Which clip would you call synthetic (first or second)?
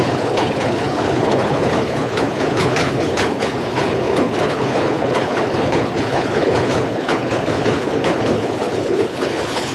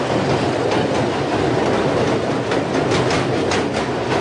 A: first